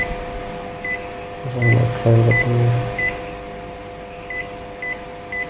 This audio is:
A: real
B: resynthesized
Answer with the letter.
A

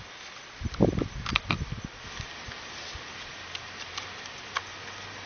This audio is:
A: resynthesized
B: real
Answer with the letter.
B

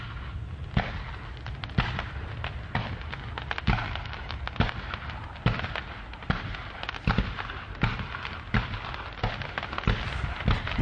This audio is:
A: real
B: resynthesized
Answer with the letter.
A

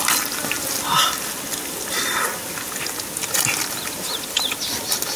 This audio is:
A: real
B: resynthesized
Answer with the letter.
A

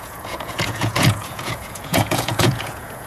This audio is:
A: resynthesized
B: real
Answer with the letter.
A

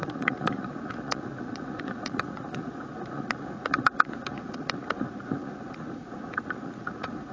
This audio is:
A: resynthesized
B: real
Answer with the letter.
A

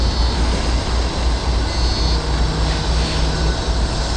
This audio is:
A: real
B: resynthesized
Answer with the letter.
A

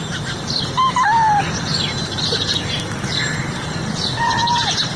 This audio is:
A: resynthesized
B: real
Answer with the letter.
B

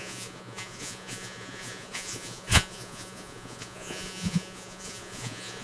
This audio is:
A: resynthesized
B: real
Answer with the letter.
A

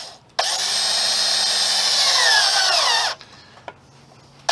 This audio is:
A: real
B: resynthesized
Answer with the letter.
A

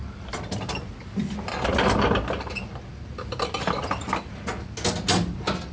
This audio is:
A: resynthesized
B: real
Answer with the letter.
B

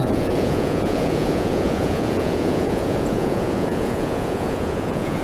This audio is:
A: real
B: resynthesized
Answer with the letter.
B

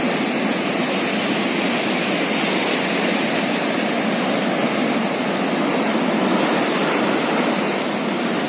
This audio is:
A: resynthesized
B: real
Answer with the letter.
B